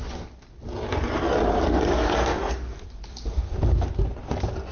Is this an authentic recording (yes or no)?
yes